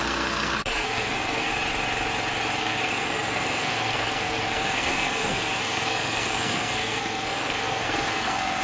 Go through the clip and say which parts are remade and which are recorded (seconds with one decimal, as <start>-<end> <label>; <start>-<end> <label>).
0.0-1.5 remade; 1.5-2.6 recorded; 2.6-8.6 remade